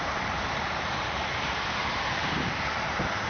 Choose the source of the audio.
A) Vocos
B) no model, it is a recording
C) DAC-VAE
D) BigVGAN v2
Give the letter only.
D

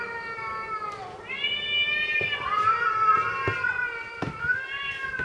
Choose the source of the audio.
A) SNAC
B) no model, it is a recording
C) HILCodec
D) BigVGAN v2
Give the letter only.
B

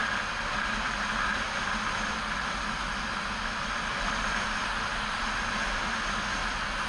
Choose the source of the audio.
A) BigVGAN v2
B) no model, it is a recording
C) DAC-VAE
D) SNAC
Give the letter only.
B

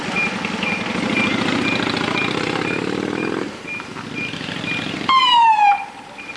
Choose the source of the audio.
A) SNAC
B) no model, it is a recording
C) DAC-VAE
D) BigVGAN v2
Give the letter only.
D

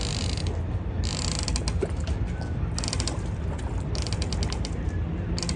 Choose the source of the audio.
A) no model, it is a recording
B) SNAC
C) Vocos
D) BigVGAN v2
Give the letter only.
A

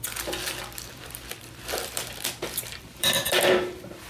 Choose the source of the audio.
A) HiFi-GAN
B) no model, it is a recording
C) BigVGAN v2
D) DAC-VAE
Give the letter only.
C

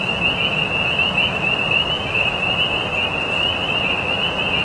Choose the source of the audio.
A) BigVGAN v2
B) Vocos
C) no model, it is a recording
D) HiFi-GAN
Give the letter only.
C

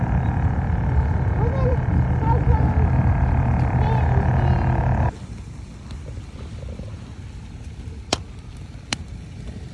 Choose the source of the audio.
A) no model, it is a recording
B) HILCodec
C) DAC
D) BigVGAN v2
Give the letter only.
A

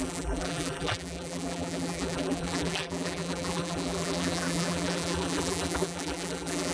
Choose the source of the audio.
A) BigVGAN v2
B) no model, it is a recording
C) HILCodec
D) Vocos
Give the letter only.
A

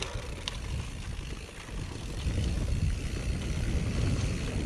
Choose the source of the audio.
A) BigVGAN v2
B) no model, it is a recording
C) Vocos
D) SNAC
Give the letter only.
B